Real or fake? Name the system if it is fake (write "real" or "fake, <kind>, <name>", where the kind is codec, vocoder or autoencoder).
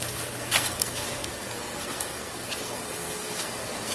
fake, codec, SNAC